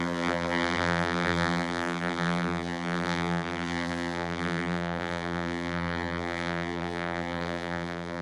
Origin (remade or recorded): remade